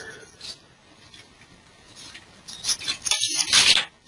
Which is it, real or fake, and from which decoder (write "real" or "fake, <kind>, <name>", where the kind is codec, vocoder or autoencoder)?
real